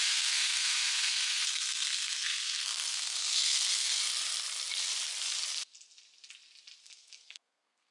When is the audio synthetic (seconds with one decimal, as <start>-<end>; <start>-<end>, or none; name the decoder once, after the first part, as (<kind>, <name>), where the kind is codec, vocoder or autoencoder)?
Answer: 0.0-4.0 (codec, SNAC); 6.8-7.9